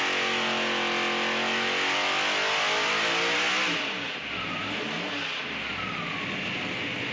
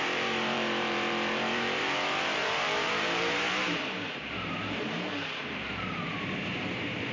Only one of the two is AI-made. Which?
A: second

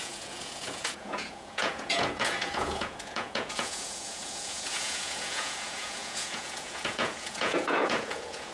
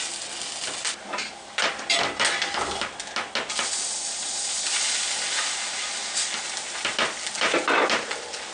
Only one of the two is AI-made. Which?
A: first